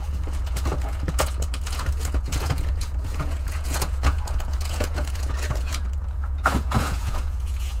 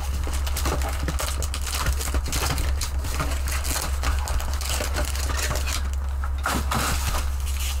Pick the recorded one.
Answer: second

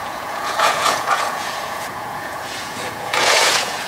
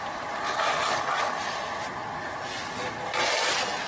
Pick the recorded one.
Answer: second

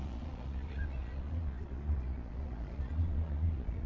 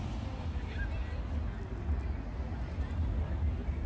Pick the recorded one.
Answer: second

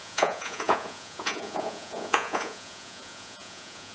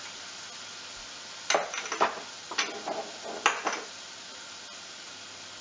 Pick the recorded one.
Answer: second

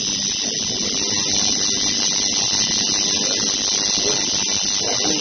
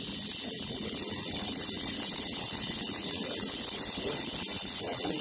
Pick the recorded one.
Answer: first